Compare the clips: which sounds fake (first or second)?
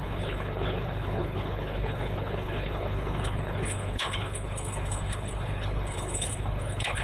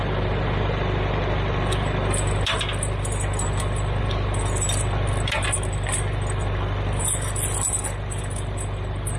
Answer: first